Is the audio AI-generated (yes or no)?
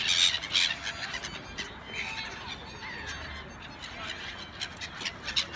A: no